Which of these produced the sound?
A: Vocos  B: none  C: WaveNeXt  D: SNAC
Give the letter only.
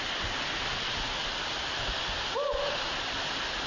B